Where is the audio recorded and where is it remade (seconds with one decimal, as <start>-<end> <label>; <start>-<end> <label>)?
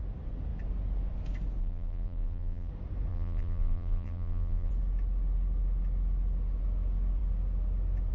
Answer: 0.0-1.6 recorded; 1.6-2.7 remade; 2.7-3.1 recorded; 3.1-4.7 remade; 4.7-8.1 recorded